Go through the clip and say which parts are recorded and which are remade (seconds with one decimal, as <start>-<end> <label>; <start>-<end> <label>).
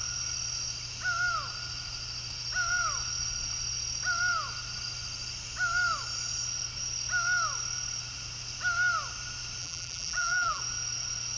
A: 0.0-9.6 recorded; 9.6-10.6 remade; 10.6-11.4 recorded